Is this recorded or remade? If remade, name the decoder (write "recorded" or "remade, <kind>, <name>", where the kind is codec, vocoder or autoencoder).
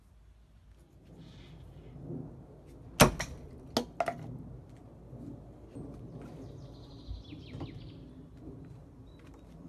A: recorded